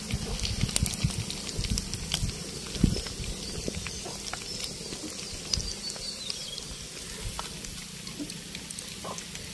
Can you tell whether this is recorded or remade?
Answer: recorded